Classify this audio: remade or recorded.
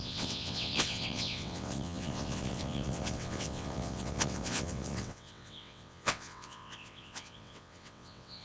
remade